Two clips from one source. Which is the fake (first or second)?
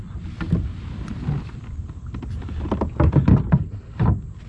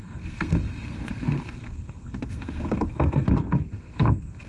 second